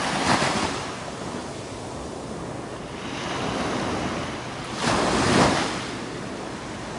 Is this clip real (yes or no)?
yes